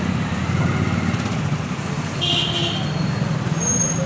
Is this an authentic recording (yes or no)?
yes